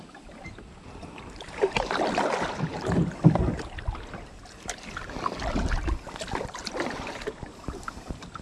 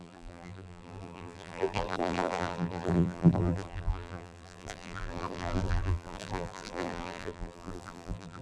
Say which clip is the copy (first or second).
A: second